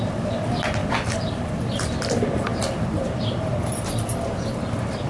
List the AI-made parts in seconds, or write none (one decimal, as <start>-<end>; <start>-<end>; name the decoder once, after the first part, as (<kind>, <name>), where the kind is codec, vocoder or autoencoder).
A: 2.5-3.3 (vocoder, BigVGAN v2)